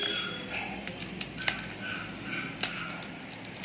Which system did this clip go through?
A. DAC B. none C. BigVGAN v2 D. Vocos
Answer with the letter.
B